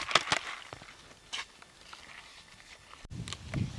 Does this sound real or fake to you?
real